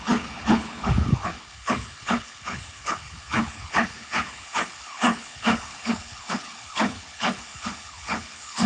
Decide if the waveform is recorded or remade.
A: remade